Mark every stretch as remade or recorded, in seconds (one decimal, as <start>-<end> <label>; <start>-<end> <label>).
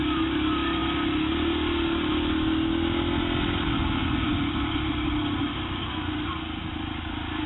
0.0-4.3 recorded; 4.3-6.4 remade; 6.4-7.5 recorded